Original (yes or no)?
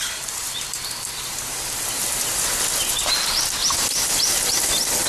yes